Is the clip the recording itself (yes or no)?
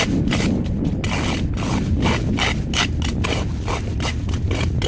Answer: yes